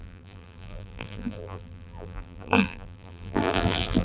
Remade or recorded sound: remade